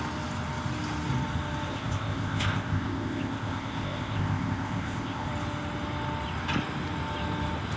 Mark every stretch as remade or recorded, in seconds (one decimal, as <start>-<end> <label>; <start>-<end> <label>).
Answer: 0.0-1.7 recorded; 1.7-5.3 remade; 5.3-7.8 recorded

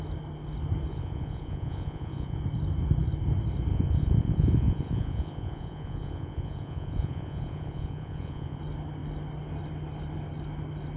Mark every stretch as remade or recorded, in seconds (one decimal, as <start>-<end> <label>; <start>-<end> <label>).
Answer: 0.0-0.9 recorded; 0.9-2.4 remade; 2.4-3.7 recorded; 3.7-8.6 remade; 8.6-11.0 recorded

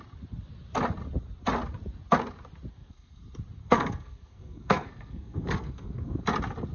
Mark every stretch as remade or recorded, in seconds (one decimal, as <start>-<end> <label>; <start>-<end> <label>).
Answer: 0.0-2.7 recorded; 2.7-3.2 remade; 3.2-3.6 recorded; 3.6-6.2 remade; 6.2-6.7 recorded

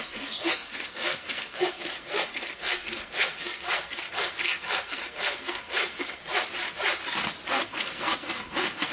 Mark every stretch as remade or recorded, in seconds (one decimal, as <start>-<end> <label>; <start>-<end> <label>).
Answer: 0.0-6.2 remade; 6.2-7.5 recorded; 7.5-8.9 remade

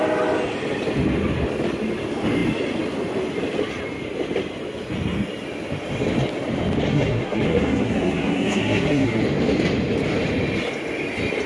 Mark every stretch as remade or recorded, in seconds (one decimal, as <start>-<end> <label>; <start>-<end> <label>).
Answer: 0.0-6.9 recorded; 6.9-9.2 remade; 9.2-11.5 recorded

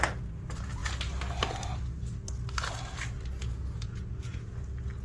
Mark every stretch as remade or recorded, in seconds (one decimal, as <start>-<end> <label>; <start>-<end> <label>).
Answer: 0.0-3.4 recorded; 3.4-4.5 remade; 4.5-5.0 recorded

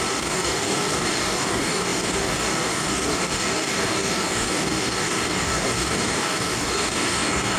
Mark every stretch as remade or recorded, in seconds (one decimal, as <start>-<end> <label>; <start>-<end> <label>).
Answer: 0.0-7.6 remade

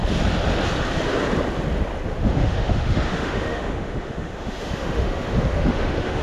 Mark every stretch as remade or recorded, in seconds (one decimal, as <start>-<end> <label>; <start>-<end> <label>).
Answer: 0.0-2.2 recorded; 2.2-6.2 remade